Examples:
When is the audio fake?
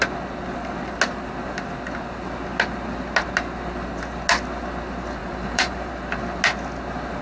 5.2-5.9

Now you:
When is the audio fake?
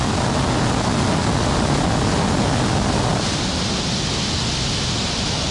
none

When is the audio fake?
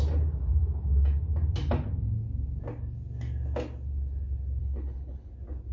4.6-5.3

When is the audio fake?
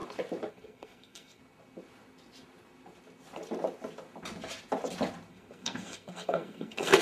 0.5-1.4; 5.3-7.0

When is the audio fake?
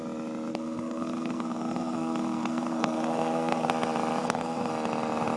0.5-3.7; 4.2-4.7